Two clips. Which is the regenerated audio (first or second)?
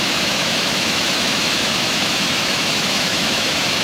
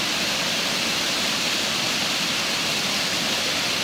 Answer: first